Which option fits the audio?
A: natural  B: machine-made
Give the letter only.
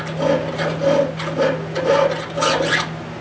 A